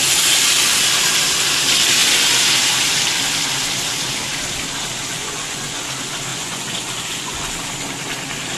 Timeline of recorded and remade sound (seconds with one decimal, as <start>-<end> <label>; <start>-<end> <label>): 0.0-5.1 recorded; 5.1-5.8 remade; 5.8-6.3 recorded; 6.3-7.5 remade; 7.5-8.6 recorded

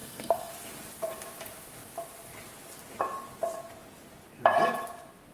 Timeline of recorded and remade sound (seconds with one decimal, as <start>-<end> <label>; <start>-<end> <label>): 0.0-0.5 remade; 0.5-5.3 recorded

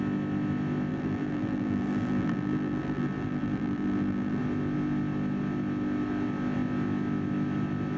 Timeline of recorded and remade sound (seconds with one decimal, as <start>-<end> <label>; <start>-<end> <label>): 0.0-0.9 recorded; 0.9-4.4 remade; 4.4-8.0 recorded